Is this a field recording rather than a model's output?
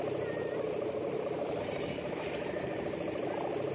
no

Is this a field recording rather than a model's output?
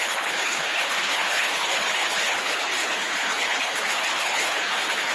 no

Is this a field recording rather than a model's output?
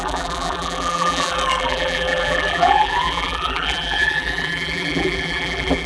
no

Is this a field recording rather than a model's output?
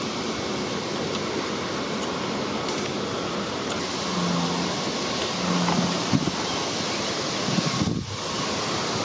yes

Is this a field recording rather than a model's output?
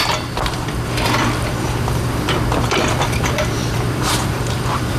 no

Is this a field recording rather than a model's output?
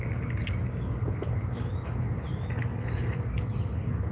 yes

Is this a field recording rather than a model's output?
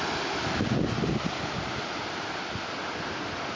yes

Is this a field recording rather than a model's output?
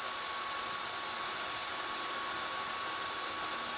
yes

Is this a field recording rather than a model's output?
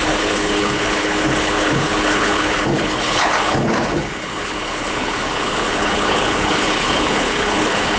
no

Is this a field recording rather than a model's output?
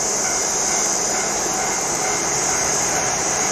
no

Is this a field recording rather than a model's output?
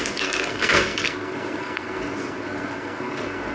no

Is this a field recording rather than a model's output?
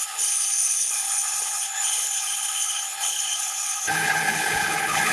no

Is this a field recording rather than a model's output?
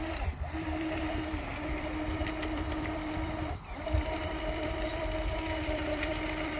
no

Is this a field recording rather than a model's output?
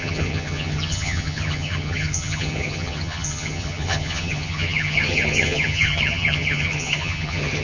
no